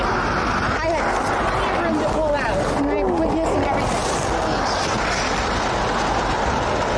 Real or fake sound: real